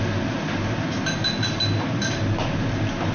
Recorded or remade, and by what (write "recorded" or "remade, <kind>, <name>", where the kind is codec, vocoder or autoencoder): recorded